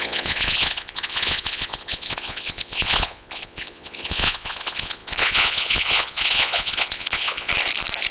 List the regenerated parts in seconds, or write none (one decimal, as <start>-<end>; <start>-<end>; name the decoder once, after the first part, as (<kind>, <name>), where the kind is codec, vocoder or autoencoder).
0.0-7.5 (vocoder, Vocos)